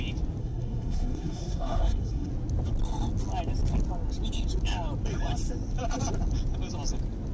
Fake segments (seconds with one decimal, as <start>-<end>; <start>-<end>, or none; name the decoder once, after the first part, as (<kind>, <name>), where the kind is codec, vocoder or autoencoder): 0.4-2.3 (codec, SNAC)